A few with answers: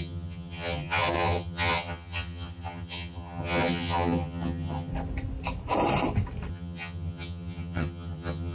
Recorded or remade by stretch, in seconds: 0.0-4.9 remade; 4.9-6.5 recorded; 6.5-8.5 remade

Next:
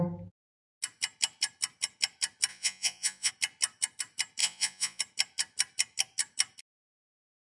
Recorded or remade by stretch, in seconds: 0.0-2.5 recorded; 2.5-3.3 remade; 3.3-4.4 recorded; 4.4-5.0 remade; 5.0-7.5 recorded

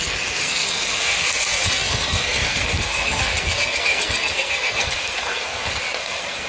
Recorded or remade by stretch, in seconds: 0.0-6.5 remade

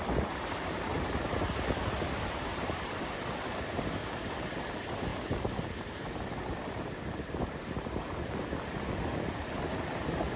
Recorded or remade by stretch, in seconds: 0.0-2.5 recorded; 2.5-3.2 remade; 3.2-4.0 recorded; 4.0-4.6 remade; 4.6-5.1 recorded; 5.1-8.4 remade; 8.4-10.4 recorded